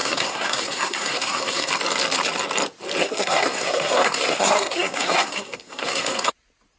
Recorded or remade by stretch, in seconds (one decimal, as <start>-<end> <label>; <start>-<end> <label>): 0.0-1.7 remade; 1.7-3.0 recorded; 3.0-6.3 remade; 6.3-6.8 recorded